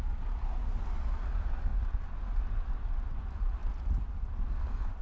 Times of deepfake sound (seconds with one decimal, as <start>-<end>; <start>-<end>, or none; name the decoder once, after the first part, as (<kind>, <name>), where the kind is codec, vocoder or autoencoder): 1.7-3.2 (vocoder, BigVGAN v2); 3.6-4.1